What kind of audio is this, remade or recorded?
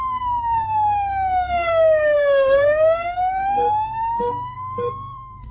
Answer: remade